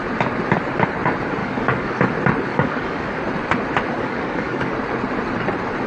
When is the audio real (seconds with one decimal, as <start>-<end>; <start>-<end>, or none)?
0.0-1.4; 2.1-2.5; 3.2-4.0; 4.7-5.9